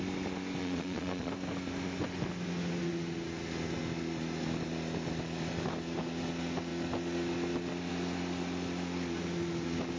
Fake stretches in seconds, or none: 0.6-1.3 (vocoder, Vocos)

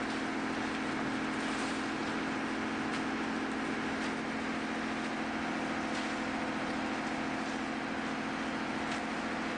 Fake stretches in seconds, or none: none

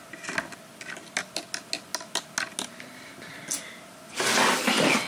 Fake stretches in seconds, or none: none

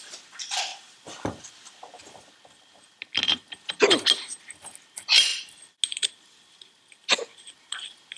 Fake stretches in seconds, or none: none

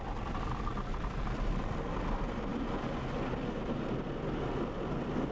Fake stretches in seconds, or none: none